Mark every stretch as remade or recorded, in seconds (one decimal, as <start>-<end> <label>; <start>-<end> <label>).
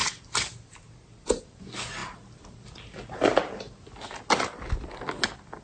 0.0-5.6 recorded